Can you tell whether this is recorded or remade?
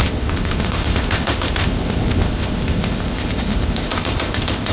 remade